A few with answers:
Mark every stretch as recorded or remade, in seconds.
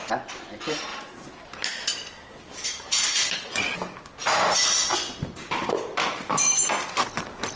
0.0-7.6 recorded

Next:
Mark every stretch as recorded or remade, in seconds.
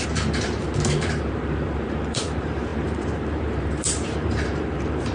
0.0-5.1 remade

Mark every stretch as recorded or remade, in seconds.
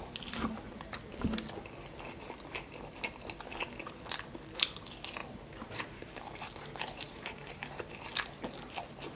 0.0-5.2 recorded; 5.2-7.9 remade; 7.9-9.2 recorded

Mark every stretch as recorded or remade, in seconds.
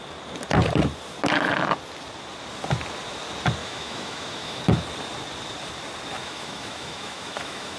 0.0-3.6 recorded; 3.6-4.6 remade; 4.6-6.2 recorded; 6.2-7.8 remade